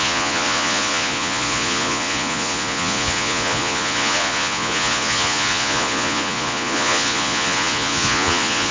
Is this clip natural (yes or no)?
no